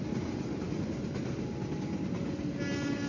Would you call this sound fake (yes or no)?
no